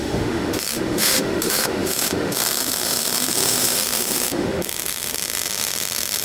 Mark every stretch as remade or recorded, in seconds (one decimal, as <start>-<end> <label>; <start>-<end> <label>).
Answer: 0.0-6.2 remade